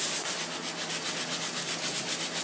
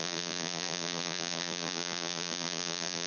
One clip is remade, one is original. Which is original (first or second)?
first